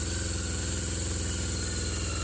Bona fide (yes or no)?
yes